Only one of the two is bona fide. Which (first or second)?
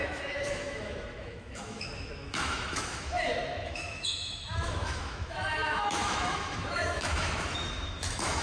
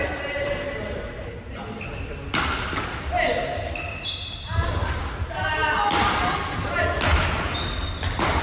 second